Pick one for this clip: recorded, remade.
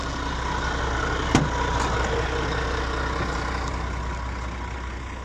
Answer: recorded